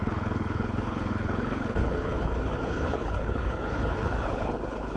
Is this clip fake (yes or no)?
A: yes